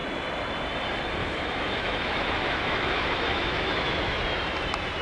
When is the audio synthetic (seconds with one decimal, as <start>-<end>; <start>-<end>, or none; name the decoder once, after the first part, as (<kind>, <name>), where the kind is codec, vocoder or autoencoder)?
1.2-4.2 (autoencoder, DAC-VAE)